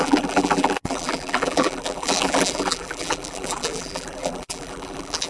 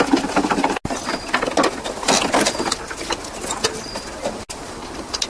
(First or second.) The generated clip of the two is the first